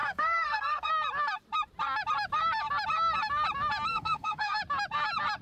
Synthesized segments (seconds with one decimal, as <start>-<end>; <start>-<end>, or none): 0.0-0.9; 3.9-4.6